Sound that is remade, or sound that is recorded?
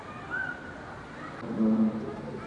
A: recorded